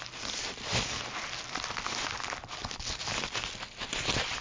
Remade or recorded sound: recorded